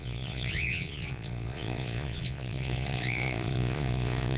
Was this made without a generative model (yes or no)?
no